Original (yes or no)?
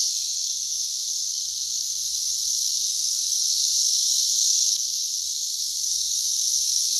no